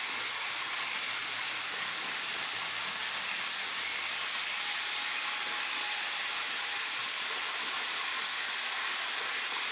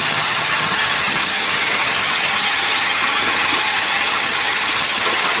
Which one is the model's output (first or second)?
second